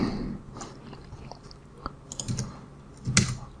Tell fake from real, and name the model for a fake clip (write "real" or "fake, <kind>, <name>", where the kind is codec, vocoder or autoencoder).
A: real